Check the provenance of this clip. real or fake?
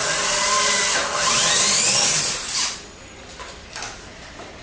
real